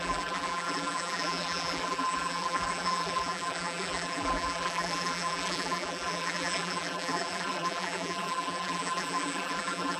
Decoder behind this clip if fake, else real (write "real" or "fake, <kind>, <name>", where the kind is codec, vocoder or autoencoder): fake, vocoder, BigVGAN v2